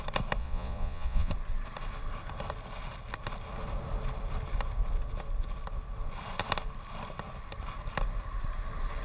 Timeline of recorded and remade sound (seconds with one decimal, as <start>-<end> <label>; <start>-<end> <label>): 0.0-0.4 recorded; 0.4-1.3 remade; 1.3-9.0 recorded